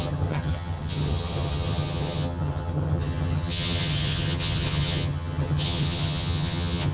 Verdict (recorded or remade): remade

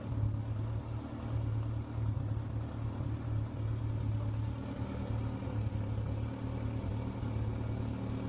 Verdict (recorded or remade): recorded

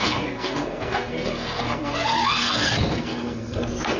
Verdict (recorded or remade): remade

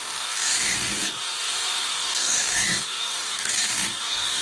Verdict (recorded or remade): remade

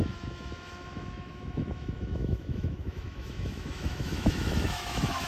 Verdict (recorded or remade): remade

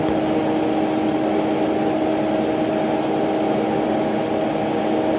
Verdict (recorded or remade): recorded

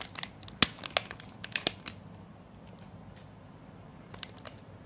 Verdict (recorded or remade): recorded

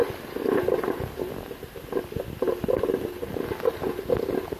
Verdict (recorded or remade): remade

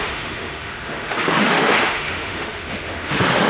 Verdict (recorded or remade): remade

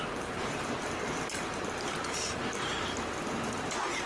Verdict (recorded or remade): remade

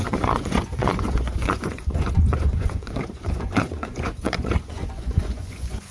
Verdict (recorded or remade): remade